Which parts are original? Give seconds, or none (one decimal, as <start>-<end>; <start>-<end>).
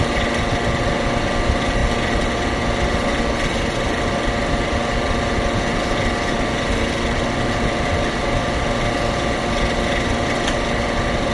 0.0-11.3